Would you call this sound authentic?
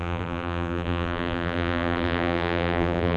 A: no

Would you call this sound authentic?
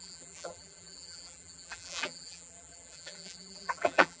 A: no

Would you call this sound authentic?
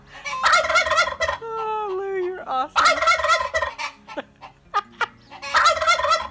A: yes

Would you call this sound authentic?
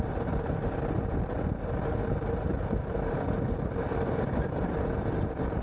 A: yes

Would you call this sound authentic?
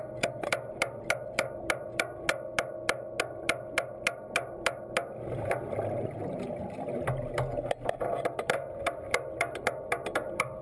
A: yes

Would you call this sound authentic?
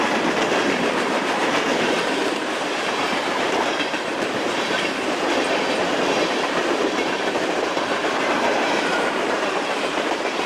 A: no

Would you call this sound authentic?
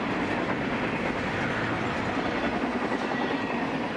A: yes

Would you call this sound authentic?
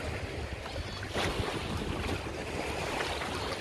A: yes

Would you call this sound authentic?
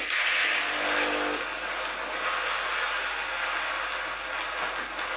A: yes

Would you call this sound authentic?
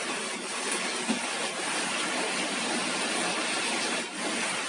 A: yes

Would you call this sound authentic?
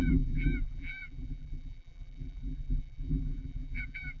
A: no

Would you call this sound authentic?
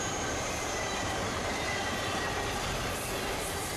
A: no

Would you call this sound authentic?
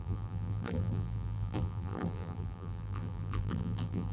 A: no